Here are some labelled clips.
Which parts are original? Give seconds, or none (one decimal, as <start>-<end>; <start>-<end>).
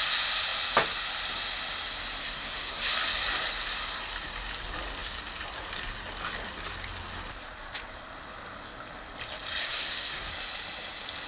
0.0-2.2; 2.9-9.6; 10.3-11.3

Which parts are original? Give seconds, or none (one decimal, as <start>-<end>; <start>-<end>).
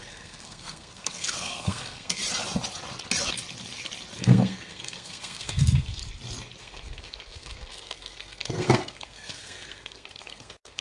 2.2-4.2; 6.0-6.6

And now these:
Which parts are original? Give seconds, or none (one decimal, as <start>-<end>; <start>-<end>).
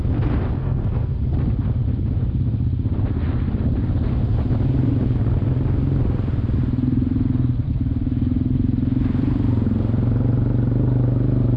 0.0-0.6; 1.2-11.6